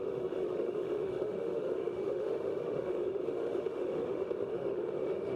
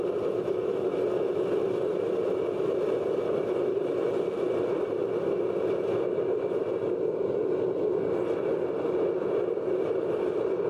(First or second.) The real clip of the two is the second